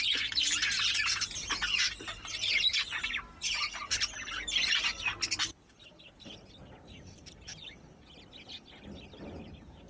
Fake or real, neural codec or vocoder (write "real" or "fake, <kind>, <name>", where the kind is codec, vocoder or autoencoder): real